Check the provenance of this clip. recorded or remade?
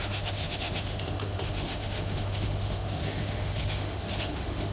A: remade